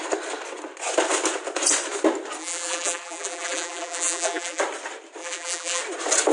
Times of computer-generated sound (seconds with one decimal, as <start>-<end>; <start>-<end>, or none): 2.4-4.6; 5.2-5.8